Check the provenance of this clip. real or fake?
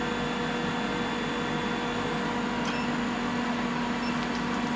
real